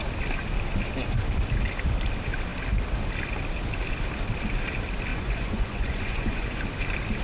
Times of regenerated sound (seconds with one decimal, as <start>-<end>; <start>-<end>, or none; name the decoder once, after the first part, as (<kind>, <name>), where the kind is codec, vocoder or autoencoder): 5.1-6.6 (vocoder, Vocos)

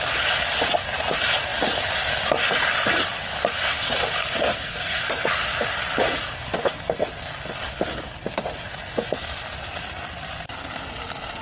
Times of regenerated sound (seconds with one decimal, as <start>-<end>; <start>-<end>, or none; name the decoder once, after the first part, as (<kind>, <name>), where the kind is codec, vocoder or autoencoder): 4.2-5.0 (codec, SNAC)

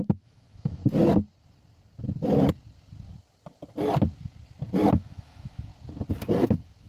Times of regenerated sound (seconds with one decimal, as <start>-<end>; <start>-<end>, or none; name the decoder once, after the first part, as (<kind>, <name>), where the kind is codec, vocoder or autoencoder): 0.0-0.8 (autoencoder, DAC-VAE); 4.9-5.7; 6.4-6.9

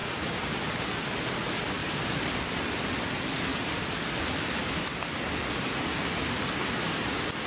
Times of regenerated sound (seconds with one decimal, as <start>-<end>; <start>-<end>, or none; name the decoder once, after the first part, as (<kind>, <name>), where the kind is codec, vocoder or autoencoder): 0.0-1.4 (vocoder, BigVGAN v2); 1.8-2.9

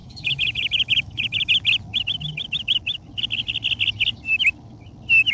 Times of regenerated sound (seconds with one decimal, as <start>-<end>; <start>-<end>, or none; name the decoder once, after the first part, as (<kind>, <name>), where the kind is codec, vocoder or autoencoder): 0.0-1.5 (autoencoder, DAC-VAE)

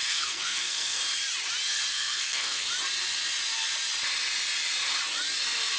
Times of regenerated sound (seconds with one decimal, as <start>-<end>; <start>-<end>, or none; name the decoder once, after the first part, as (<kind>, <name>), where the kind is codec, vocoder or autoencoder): 0.0-1.0 (codec, SNAC); 1.9-2.7